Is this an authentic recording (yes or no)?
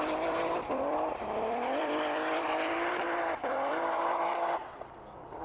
no